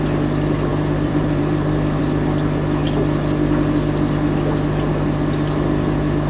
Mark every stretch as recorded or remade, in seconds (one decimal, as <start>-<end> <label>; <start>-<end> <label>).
0.0-0.7 recorded; 0.7-2.0 remade; 2.0-6.3 recorded